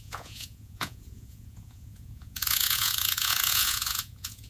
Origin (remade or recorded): remade